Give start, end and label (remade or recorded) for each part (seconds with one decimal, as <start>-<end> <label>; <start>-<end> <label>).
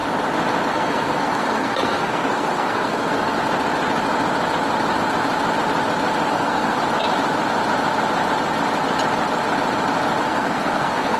0.0-0.7 recorded; 0.7-3.4 remade; 3.4-6.3 recorded; 6.3-6.8 remade; 6.8-10.2 recorded; 10.2-11.2 remade